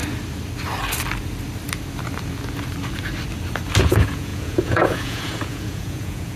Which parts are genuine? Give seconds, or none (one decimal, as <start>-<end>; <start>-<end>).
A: 0.0-3.8